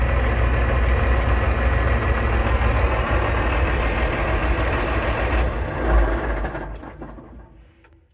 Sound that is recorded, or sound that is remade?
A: recorded